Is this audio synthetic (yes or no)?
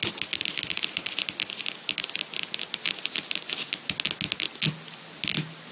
no